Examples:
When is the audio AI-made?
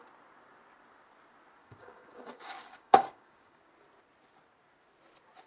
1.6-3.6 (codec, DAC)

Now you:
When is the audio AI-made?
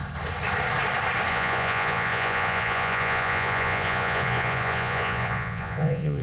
1.3-6.2 (vocoder, Vocos)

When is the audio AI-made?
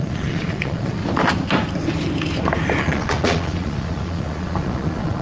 0.0-1.0 (vocoder, Vocos); 2.8-5.2